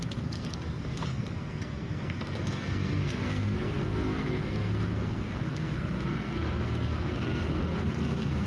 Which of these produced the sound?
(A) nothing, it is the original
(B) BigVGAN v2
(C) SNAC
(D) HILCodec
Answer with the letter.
C